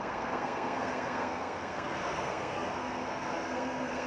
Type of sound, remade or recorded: remade